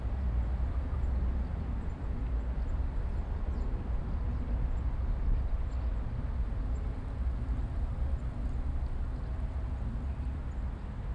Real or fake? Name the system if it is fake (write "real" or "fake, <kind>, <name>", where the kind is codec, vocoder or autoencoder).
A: real